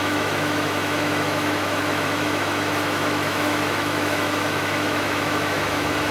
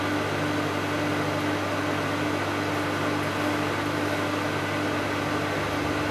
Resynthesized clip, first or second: first